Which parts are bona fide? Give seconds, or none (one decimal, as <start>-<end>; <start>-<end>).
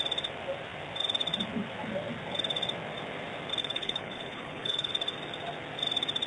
0.0-3.6; 4.9-6.3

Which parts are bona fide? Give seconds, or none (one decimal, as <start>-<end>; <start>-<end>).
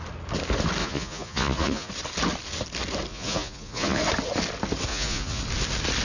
0.0-0.8; 1.9-3.1; 4.0-4.9; 5.4-6.0